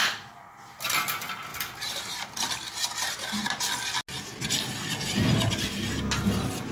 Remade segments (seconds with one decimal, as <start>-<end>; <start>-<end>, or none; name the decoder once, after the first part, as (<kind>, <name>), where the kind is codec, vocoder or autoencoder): none